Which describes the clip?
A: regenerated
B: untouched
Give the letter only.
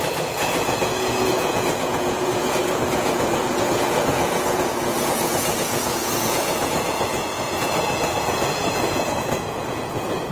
A